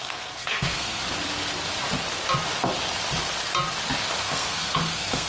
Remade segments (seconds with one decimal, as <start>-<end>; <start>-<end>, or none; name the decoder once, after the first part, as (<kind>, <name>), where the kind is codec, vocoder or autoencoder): 0.0-1.0 (codec, SNAC); 4.2-5.3